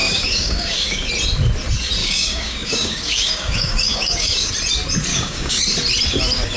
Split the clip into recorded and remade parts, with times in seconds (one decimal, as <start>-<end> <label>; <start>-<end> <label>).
0.0-1.1 remade; 1.1-2.0 recorded; 2.0-4.5 remade; 4.5-5.1 recorded; 5.1-5.6 remade; 5.6-6.6 recorded

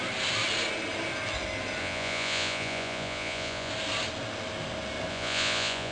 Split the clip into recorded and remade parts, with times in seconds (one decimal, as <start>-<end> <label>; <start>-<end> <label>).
0.0-1.8 recorded; 1.8-3.7 remade; 3.7-5.1 recorded; 5.1-5.9 remade

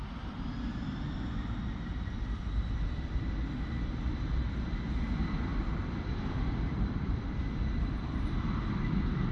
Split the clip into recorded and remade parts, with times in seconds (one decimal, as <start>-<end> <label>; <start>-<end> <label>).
0.0-5.5 recorded; 5.5-9.3 remade

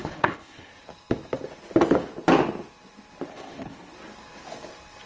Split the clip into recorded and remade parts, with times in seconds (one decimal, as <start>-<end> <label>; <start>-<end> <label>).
0.0-0.7 remade; 0.7-3.3 recorded; 3.3-3.9 remade; 3.9-5.1 recorded

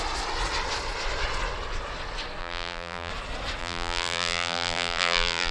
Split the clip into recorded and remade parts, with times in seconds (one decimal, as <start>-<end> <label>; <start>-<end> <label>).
0.0-2.4 recorded; 2.4-3.1 remade; 3.1-3.6 recorded; 3.6-5.5 remade